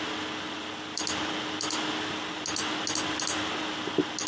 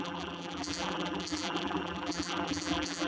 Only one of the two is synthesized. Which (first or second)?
second